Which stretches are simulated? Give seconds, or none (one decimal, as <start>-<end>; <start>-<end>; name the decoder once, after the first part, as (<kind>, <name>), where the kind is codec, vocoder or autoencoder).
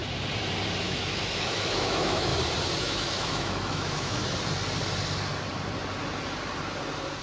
0.8-2.3 (autoencoder, DAC-VAE); 2.8-4.2